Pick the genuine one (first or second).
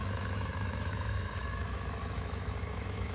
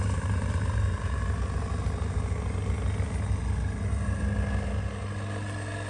second